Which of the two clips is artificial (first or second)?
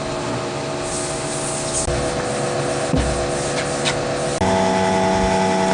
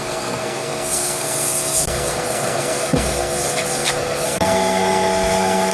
second